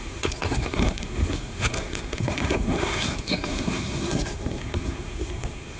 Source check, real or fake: fake